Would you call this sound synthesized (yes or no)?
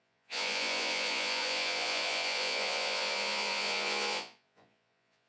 yes